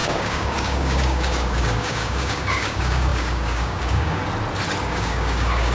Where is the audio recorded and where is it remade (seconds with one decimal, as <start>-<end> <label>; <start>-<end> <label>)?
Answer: 0.0-4.2 remade; 4.2-4.8 recorded; 4.8-5.7 remade